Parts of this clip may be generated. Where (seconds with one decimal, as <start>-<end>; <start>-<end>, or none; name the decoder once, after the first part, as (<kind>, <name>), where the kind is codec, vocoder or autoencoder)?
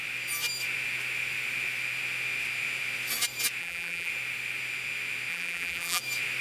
3.6-4.1 (vocoder, BigVGAN v2); 5.3-6.0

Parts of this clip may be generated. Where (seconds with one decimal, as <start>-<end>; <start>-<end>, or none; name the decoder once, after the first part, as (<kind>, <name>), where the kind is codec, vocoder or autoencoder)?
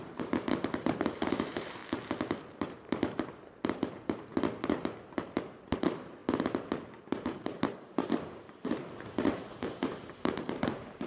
0.0-1.8 (vocoder, BigVGAN v2); 2.6-4.3; 5.6-6.2; 7.0-11.1